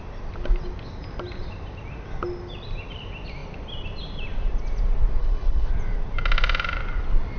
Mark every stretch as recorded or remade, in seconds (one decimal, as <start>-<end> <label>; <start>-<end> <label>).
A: 0.0-5.2 recorded; 5.2-5.7 remade; 5.7-7.4 recorded